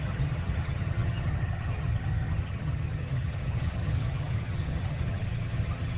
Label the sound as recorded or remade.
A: remade